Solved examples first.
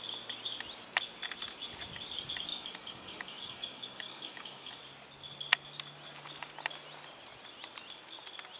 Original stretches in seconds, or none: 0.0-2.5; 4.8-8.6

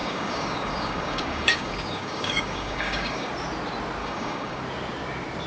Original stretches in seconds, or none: 3.3-4.0; 4.6-5.5

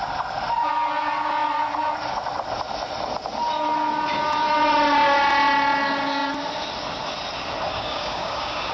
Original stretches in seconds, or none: 0.0-7.7